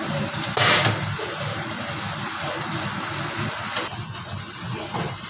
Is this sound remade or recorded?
recorded